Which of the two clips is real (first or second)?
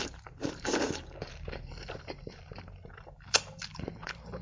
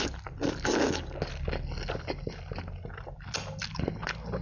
second